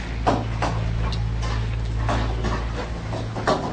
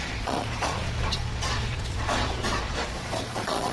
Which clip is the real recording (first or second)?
first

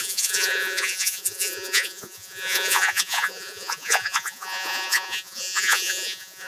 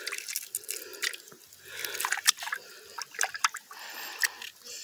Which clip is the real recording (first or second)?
second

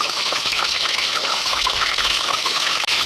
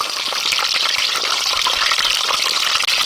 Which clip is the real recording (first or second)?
second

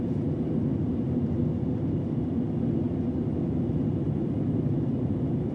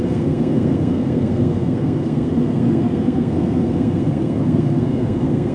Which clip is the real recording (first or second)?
first